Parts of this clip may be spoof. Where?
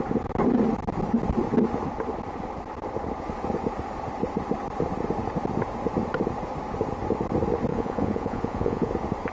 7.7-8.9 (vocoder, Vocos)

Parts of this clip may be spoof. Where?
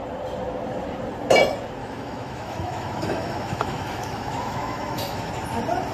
1.8-5.3 (autoencoder, DAC-VAE)